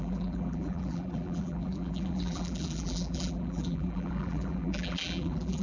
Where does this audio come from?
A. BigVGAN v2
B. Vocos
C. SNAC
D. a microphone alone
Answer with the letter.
A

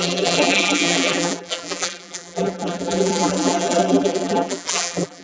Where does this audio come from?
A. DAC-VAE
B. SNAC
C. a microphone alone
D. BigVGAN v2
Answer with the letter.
D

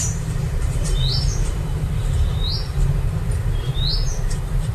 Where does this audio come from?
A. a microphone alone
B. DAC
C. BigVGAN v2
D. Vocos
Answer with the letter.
C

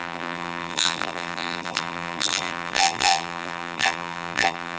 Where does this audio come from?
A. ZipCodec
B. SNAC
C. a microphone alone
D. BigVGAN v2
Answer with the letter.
D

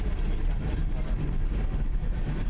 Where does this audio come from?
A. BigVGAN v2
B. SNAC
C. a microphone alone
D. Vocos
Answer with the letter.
A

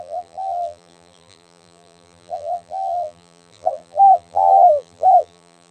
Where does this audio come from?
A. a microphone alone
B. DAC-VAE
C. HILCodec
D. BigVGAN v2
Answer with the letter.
D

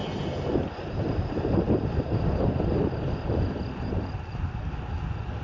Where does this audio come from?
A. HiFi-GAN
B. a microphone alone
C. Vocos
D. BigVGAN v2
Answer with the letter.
B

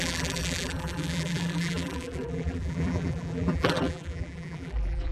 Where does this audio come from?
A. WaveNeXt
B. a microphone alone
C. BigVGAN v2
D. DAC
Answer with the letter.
C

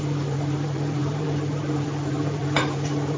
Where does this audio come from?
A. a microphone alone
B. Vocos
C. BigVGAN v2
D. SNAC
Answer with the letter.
C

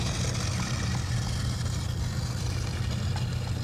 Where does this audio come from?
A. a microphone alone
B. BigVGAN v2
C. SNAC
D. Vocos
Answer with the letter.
A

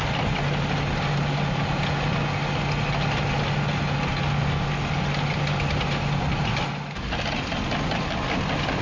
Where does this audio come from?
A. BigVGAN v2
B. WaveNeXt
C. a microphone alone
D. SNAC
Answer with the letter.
C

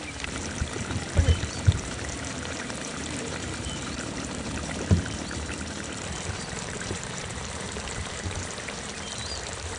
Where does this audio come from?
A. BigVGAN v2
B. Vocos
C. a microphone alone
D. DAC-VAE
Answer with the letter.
A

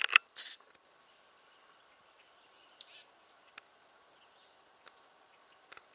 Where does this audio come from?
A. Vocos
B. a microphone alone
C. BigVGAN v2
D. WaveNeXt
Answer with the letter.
C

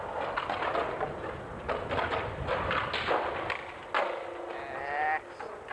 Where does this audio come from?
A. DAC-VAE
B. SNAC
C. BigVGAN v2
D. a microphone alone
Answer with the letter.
D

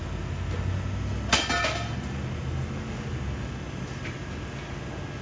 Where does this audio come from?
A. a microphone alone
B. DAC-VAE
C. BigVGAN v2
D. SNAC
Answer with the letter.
A